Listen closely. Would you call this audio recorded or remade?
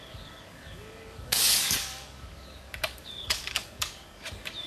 remade